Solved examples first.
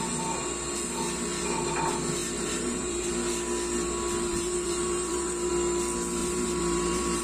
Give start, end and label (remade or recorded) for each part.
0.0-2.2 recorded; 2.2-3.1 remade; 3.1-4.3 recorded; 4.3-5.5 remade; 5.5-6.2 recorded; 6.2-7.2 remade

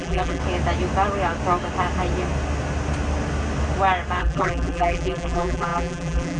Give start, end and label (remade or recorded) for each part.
0.0-0.4 remade; 0.4-4.2 recorded; 4.2-6.4 remade

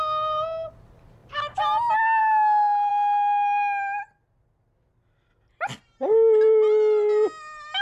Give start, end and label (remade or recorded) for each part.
0.0-7.8 recorded

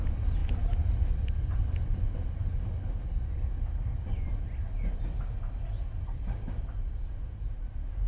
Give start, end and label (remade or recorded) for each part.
0.0-0.4 recorded; 0.4-2.4 remade; 2.4-5.7 recorded; 5.7-8.1 remade

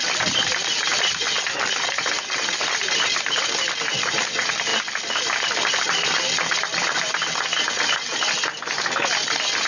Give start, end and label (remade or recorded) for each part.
0.0-9.7 recorded

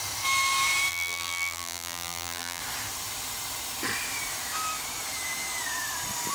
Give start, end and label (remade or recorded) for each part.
0.0-0.9 recorded; 0.9-2.6 remade; 2.6-6.3 recorded

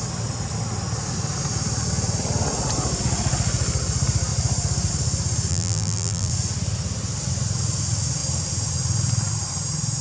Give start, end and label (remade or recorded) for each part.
0.0-5.5 recorded; 5.5-6.3 remade; 6.3-10.0 recorded

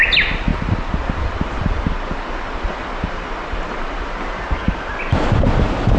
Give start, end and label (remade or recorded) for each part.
0.0-0.5 recorded; 0.5-4.1 remade; 4.1-6.0 recorded